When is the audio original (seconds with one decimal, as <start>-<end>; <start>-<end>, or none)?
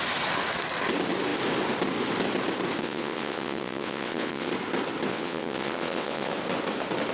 0.0-2.8; 4.5-5.1; 6.3-7.1